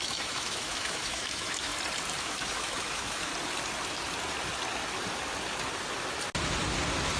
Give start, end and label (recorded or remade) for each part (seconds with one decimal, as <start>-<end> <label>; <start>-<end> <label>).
0.0-1.7 remade; 1.7-2.2 recorded; 2.2-3.3 remade; 3.3-7.2 recorded